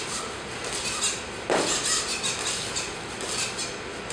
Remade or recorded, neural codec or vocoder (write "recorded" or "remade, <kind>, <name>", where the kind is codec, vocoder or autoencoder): recorded